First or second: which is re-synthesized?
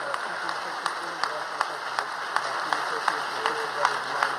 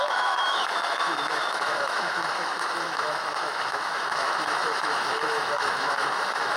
second